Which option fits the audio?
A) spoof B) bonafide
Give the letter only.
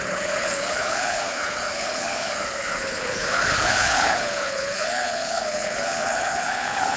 A